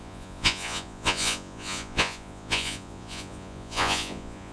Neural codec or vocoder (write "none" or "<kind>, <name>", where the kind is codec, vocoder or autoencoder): vocoder, Vocos